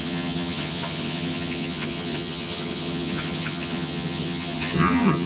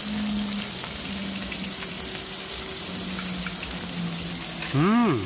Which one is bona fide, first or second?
second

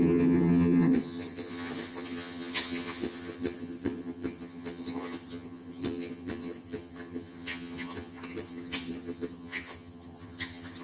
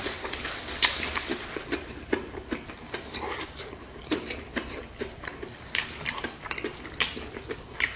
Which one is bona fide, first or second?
second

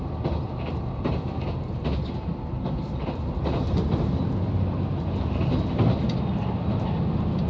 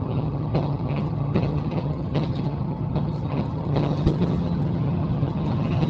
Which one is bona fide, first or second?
first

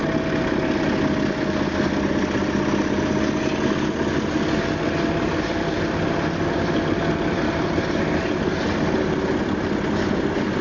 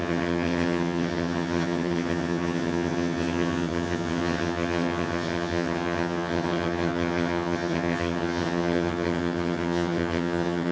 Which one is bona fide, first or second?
first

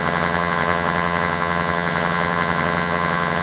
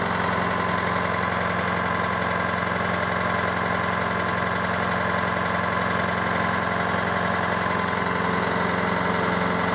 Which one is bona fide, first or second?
second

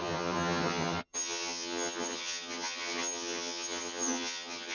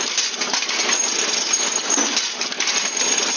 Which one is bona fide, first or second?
second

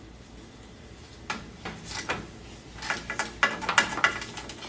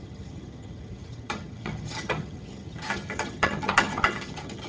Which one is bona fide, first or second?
first